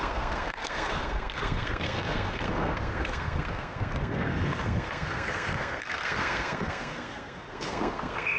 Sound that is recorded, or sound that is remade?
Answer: remade